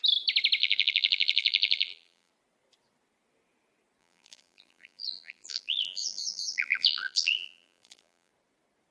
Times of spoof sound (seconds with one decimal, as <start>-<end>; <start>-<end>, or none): 0.6-2.3; 4.0-8.3